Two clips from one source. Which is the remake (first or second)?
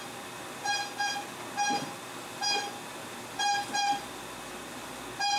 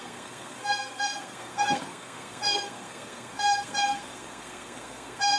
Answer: second